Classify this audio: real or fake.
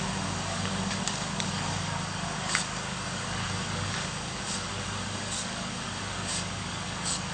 fake